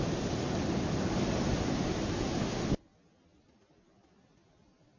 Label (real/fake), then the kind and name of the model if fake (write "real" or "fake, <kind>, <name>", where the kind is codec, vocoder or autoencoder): real